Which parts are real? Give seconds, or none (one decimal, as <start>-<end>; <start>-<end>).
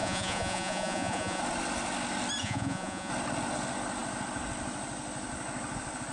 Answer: 1.4-2.4; 3.1-6.1